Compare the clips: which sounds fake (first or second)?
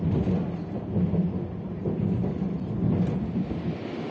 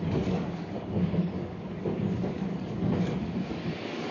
second